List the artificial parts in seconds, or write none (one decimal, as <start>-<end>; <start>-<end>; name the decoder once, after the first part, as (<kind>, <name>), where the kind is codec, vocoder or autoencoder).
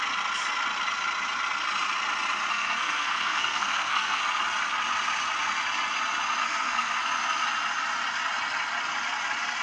2.5-4.2 (codec, SNAC); 6.4-7.0